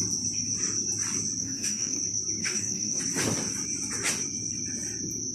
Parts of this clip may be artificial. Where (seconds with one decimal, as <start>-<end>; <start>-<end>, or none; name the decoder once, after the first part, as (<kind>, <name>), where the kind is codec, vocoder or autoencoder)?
1.4-2.0 (codec, DAC); 2.4-3.0